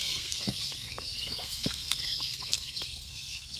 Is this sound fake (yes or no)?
yes